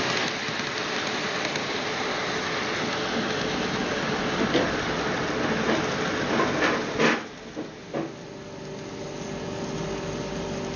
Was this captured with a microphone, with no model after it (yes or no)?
yes